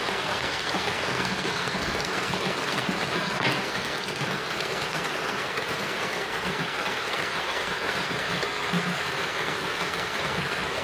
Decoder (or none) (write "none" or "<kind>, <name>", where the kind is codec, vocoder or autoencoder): codec, SNAC